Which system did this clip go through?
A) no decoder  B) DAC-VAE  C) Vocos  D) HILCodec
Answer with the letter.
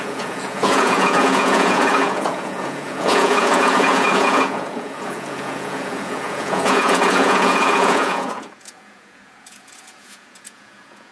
C